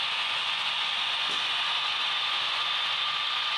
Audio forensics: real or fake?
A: fake